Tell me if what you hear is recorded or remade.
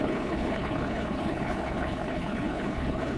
remade